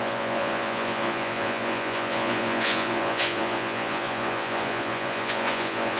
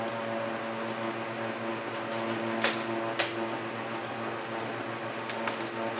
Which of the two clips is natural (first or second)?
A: second